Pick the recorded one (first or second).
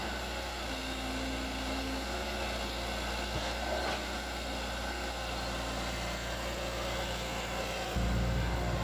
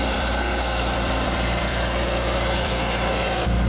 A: first